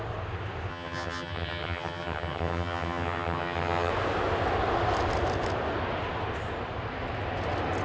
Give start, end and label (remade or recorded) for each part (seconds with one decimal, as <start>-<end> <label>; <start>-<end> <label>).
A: 0.0-0.7 recorded; 0.7-3.9 remade; 3.9-7.8 recorded